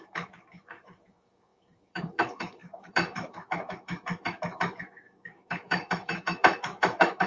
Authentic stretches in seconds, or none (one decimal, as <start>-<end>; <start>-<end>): none

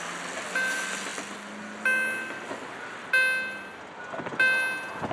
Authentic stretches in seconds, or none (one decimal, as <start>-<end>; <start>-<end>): 0.0-5.1

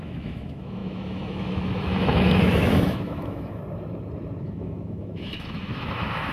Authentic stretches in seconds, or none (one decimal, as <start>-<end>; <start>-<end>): 3.6-4.4

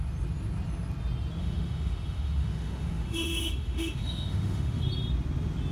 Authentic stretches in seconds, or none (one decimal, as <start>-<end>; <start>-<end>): 0.0-1.4; 4.8-5.7

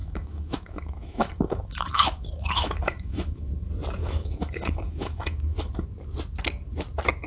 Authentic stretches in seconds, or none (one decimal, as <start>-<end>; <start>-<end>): 3.5-4.0; 5.7-7.3

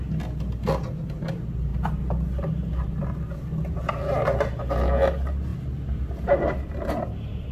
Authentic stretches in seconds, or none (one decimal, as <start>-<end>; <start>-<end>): 0.0-7.5

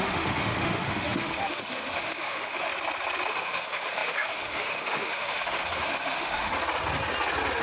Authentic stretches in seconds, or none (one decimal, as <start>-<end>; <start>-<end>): 2.7-3.3; 6.5-7.6